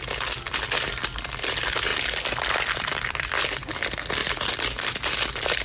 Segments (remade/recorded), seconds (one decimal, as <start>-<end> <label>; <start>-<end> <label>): 0.0-1.9 recorded; 1.9-3.4 remade; 3.4-5.6 recorded